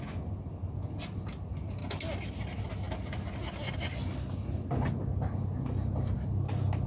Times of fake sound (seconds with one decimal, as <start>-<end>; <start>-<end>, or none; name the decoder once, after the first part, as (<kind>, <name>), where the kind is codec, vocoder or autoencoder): none